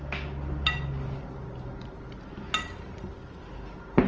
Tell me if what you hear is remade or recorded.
recorded